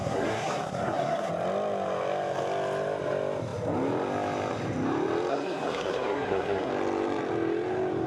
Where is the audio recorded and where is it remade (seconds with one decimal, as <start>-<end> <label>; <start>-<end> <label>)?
0.0-1.3 remade; 1.3-5.3 recorded; 5.3-6.7 remade; 6.7-8.1 recorded